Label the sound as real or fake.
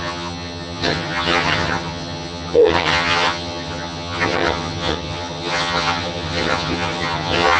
fake